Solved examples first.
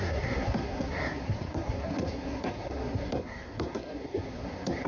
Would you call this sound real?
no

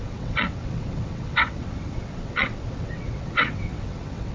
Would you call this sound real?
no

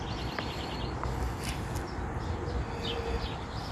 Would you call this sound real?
no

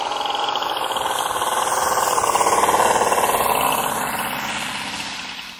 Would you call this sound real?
yes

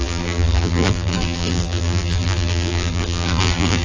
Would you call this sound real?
no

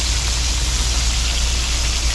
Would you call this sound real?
yes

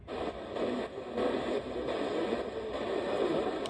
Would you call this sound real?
yes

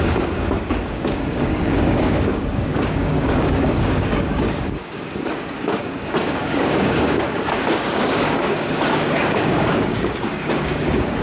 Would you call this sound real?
no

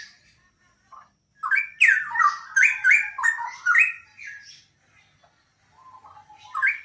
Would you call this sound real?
yes